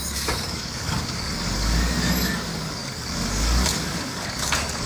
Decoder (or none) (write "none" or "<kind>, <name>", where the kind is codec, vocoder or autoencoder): codec, DAC